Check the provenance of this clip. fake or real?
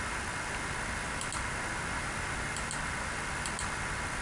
real